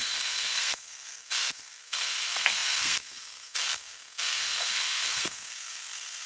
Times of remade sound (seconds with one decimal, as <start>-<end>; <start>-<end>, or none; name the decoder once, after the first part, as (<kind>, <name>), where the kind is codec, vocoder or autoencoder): 0.0-6.3 (codec, SNAC)